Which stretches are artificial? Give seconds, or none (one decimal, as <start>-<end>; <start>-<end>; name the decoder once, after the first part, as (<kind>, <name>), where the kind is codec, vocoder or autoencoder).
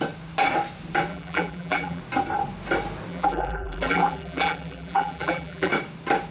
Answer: 1.1-2.0 (vocoder, BigVGAN v2); 3.1-5.7